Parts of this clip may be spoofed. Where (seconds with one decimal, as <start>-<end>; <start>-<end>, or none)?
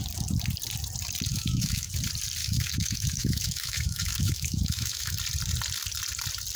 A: 1.3-1.9; 2.4-5.2